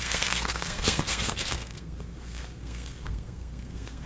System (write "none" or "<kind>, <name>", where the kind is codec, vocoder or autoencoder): codec, SNAC